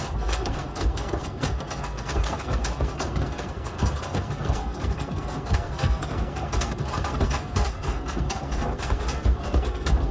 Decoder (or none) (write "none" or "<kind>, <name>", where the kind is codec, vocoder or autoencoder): codec, SNAC